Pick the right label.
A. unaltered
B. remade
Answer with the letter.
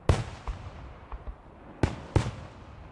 A